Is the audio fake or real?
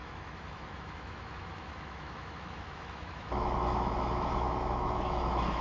fake